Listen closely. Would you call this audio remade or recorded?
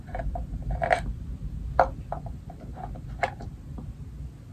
recorded